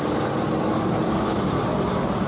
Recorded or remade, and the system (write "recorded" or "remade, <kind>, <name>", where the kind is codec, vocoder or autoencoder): recorded